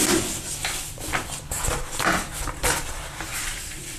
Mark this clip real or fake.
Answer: fake